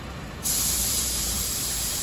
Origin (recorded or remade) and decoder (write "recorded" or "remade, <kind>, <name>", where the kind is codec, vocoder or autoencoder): remade, vocoder, BigVGAN v2